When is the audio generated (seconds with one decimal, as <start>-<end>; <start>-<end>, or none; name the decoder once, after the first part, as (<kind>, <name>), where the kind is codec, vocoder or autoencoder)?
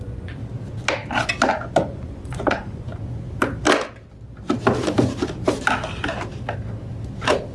0.0-0.4 (vocoder, Vocos); 1.5-2.9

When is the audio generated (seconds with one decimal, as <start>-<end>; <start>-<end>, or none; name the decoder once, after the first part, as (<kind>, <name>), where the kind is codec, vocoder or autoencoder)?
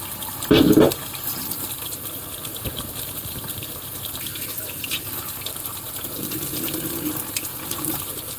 2.5-5.9 (vocoder, BigVGAN v2); 7.5-8.0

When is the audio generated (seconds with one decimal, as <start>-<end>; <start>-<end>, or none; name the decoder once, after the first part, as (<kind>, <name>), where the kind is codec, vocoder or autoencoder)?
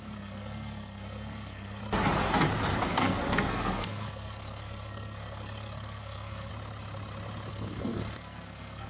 0.0-1.8 (codec, SNAC); 2.9-6.5; 7.5-8.9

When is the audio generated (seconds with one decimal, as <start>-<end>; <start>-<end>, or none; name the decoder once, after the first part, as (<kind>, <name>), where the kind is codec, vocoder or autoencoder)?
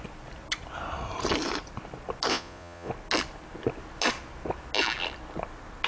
2.3-2.9 (vocoder, Vocos)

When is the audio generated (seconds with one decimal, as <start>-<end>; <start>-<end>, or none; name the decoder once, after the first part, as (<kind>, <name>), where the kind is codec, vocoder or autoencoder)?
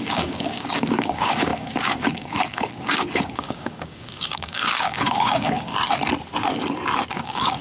0.0-5.7 (codec, DAC); 7.1-7.6